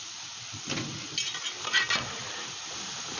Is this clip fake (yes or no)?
no